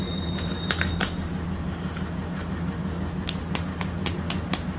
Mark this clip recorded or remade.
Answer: recorded